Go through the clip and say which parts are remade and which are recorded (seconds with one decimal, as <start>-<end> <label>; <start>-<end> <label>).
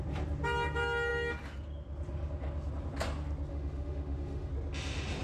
0.0-3.5 recorded; 3.5-4.5 remade; 4.5-5.2 recorded